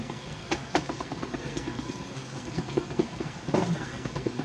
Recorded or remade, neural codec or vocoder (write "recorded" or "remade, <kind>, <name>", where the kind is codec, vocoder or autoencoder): remade, codec, SNAC